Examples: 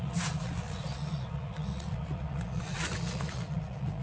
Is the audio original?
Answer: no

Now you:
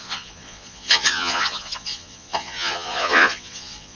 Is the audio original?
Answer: no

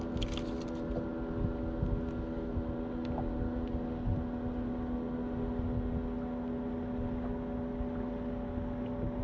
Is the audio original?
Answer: yes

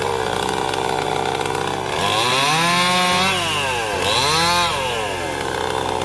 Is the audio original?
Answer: yes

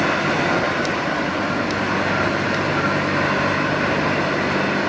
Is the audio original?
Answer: yes